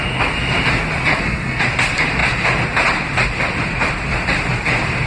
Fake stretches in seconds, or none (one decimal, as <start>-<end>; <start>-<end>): 1.1-1.6